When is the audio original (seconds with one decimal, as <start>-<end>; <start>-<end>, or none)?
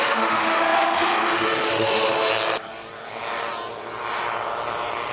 2.3-5.1